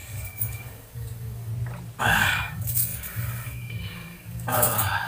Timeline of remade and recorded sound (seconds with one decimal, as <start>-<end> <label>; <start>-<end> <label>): 0.0-1.5 remade; 1.5-2.0 recorded; 2.0-5.1 remade